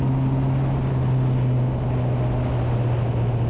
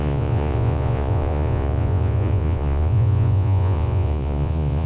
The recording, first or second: first